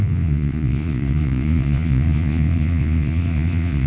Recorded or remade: remade